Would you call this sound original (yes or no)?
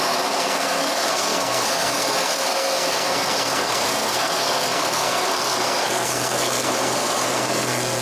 no